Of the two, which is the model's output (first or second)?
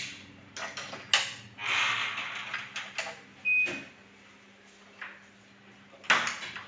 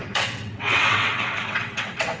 second